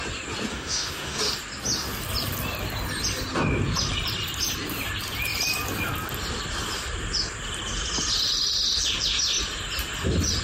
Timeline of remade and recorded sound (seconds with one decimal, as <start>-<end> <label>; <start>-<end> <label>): 0.0-0.5 recorded; 0.5-1.2 remade; 1.2-10.4 recorded